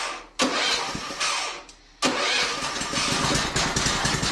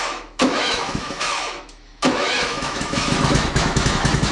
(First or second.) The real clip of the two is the first